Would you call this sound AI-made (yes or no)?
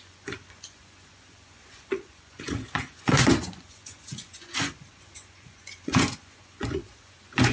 yes